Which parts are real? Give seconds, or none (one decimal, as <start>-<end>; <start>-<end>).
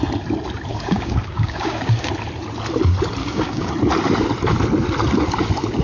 0.0-0.7; 2.1-3.2; 3.7-5.8